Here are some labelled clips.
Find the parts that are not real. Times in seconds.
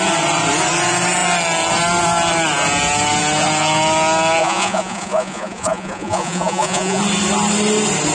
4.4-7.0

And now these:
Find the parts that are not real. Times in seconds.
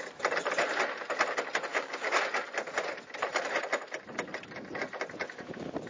1.7-2.2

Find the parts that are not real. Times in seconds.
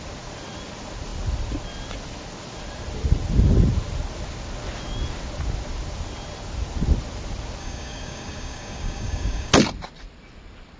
7.6-9.5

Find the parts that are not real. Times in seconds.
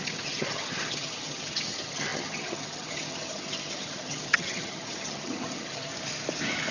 0.0-5.9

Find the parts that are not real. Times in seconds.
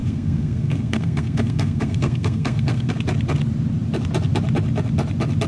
0.0-2.9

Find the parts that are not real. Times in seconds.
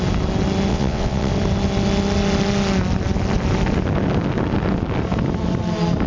0.7-1.3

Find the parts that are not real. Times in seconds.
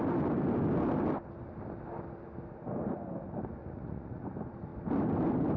3.6-4.2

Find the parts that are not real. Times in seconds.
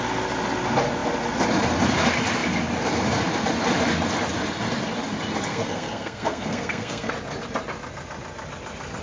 5.5-7.1